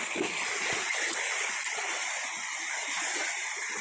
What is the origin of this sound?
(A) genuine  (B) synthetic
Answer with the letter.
A